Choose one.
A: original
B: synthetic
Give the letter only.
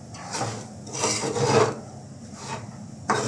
A